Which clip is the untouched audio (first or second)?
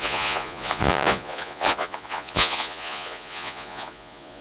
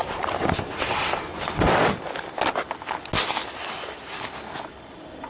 second